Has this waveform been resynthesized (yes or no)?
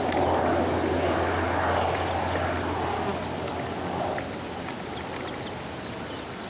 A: no